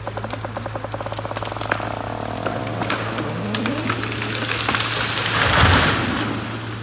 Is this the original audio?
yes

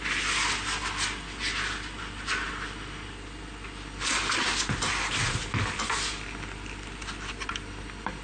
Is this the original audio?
yes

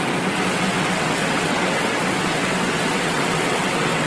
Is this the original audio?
no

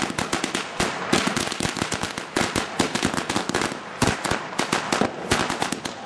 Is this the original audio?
yes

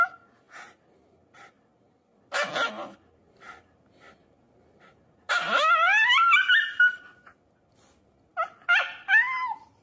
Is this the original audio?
yes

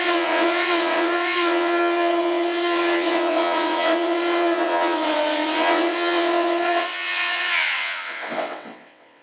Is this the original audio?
no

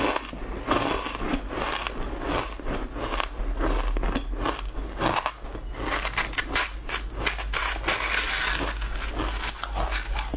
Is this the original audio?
yes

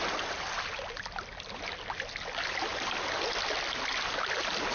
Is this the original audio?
yes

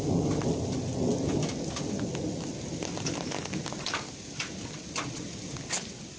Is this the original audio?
yes